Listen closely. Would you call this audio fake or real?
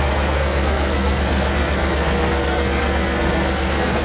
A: fake